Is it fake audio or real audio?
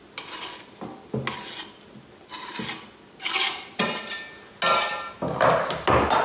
real